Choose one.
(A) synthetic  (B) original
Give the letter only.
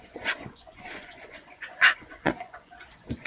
A